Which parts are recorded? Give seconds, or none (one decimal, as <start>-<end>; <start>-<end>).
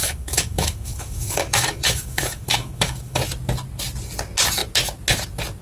3.2-5.6